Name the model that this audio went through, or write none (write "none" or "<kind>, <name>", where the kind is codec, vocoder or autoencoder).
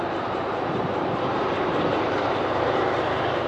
vocoder, BigVGAN v2